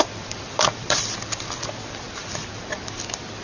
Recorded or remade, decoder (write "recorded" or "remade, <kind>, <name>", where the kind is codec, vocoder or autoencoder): remade, vocoder, BigVGAN v2